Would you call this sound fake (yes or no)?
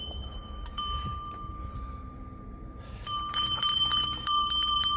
yes